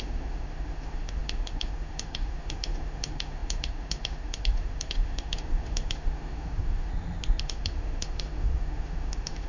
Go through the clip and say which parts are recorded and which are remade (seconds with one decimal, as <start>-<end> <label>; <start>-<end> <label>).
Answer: 0.0-6.9 remade; 6.9-7.4 recorded; 7.4-9.5 remade